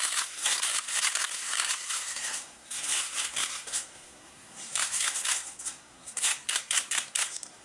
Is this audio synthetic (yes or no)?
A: yes